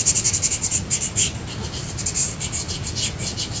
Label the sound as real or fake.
real